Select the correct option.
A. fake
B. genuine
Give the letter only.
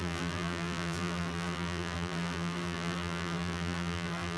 A